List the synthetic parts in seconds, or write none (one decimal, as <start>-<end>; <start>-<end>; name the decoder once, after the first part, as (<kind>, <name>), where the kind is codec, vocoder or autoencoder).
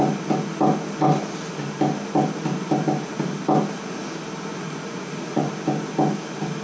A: 4.5-5.5 (vocoder, Vocos)